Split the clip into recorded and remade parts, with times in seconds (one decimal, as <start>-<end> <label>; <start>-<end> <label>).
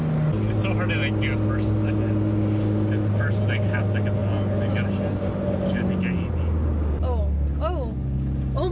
0.0-8.7 recorded